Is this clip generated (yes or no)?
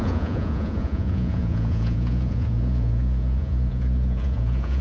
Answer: yes